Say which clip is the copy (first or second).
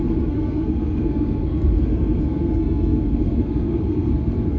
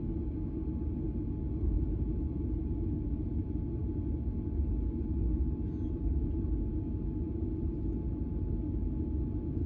first